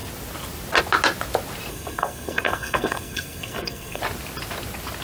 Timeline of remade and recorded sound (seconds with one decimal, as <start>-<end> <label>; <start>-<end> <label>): 0.0-1.7 recorded; 1.7-4.0 remade; 4.0-5.0 recorded